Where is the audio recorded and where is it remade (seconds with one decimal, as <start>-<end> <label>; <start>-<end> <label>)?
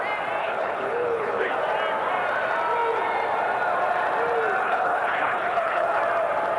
0.0-0.4 recorded; 0.4-1.5 remade; 1.5-4.6 recorded; 4.6-6.0 remade; 6.0-6.6 recorded